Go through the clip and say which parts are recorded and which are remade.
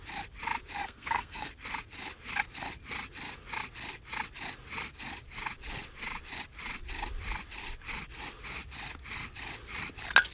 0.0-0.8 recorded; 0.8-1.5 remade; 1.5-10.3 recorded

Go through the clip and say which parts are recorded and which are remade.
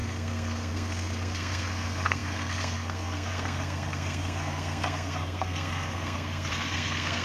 0.0-7.2 remade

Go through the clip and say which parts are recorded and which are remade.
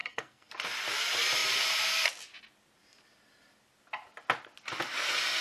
0.0-0.5 remade; 0.5-5.4 recorded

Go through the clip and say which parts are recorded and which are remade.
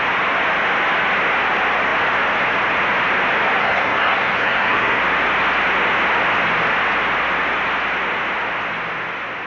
0.0-3.6 recorded; 3.6-5.0 remade; 5.0-9.5 recorded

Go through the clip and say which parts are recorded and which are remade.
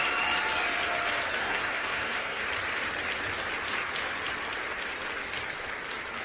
0.0-1.4 recorded; 1.4-2.4 remade; 2.4-6.2 recorded